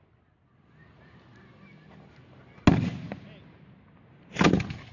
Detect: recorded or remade recorded